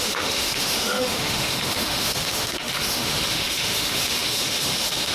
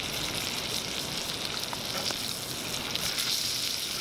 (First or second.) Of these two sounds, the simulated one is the first